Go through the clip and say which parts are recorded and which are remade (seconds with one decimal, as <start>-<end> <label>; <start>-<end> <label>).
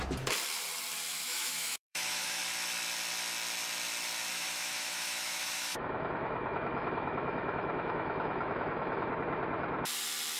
0.0-1.1 recorded; 1.1-2.4 remade; 2.4-4.3 recorded; 4.3-9.1 remade; 9.1-10.4 recorded